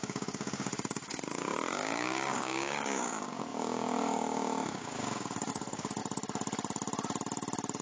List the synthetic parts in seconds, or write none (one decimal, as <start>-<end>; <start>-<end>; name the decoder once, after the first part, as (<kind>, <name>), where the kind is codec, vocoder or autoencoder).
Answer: 0.0-6.0 (codec, DAC)

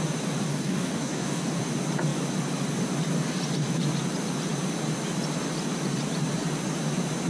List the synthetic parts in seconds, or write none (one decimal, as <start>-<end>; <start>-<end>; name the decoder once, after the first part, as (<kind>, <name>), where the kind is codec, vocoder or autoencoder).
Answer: 0.5-1.6 (codec, DAC)

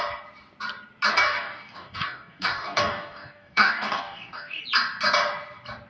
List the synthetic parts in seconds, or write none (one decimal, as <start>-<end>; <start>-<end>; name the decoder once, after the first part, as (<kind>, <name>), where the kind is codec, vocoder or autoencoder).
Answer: 1.1-4.6 (codec, DAC)

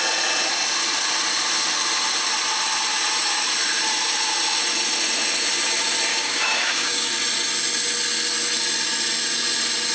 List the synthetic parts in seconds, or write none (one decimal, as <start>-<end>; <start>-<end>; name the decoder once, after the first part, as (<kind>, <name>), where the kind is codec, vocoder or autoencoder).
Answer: 6.1-7.1 (codec, DAC)

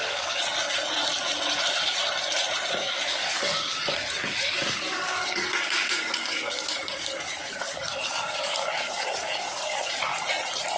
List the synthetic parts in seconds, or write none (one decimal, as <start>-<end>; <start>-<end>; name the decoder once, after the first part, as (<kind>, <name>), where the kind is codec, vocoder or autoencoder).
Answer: 0.0-0.4 (codec, DAC); 2.8-10.1